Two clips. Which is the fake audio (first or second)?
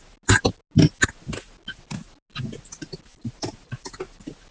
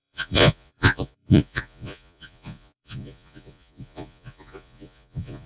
second